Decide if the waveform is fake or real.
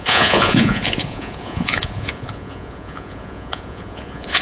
fake